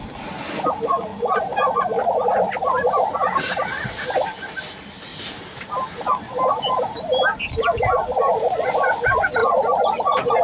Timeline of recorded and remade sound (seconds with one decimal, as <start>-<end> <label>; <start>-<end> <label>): 0.0-1.1 recorded; 1.1-2.1 remade; 2.1-5.1 recorded; 5.1-5.7 remade; 5.7-9.4 recorded; 9.4-10.4 remade